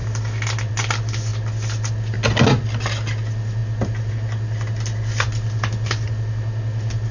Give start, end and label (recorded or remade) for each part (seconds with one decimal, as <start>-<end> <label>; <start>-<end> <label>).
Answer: 0.0-7.1 recorded